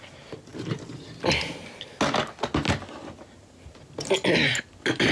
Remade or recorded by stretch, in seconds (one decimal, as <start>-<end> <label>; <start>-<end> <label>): 0.0-5.1 recorded